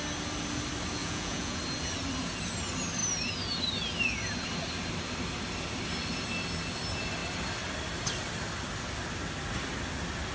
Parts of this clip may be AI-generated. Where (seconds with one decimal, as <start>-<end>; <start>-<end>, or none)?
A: 1.0-1.6